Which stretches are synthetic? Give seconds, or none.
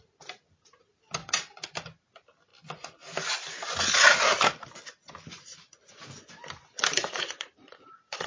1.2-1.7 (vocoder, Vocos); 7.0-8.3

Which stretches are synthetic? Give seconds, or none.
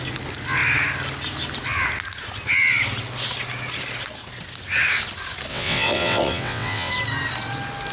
5.5-6.9 (vocoder, WaveNeXt)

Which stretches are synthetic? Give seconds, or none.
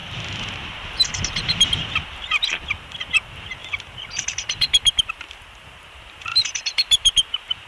0.0-7.7 (vocoder, BigVGAN v2)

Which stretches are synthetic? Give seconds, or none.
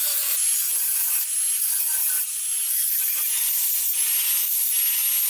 none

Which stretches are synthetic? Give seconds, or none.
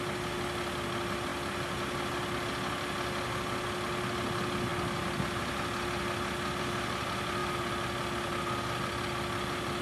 none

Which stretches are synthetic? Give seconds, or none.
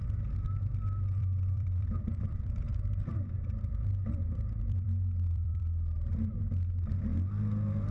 1.2-5.6 (vocoder, BigVGAN v2)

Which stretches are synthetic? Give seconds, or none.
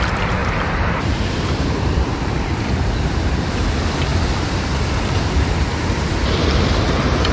0.4-3.5 (vocoder, BigVGAN v2); 4.1-5.8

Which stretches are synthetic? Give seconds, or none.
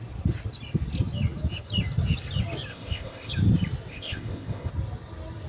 2.7-3.3 (codec, ZipCodec); 3.9-4.7